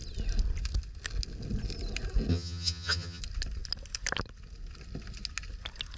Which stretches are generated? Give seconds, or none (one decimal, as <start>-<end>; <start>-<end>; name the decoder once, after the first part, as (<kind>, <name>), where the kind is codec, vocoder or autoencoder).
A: 2.3-3.2 (vocoder, HiFi-GAN)